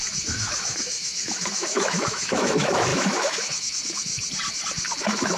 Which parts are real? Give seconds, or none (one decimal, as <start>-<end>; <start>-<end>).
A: 4.1-5.0